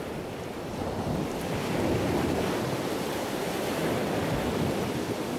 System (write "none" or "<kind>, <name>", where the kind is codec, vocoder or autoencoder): none